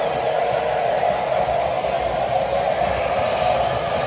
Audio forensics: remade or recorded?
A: recorded